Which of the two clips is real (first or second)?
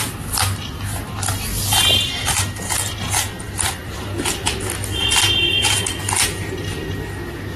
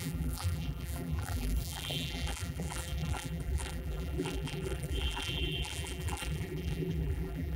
first